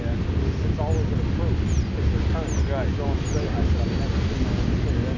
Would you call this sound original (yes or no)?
yes